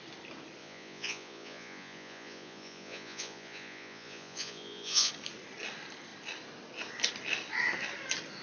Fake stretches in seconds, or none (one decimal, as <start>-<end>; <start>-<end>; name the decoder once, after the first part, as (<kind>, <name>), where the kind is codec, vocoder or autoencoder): 0.6-5.1 (vocoder, Vocos)